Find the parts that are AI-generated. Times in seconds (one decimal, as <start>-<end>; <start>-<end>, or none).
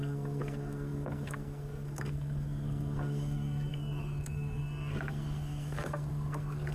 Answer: 0.0-6.7